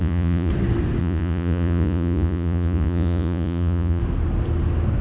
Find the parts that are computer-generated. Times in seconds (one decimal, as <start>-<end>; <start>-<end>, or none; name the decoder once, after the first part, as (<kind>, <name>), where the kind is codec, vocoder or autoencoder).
0.0-0.5 (vocoder, Vocos); 1.0-4.0